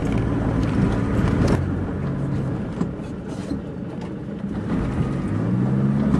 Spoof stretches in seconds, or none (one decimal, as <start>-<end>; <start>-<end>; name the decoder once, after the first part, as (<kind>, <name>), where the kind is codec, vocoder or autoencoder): none